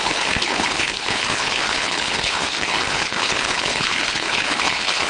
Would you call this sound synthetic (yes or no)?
yes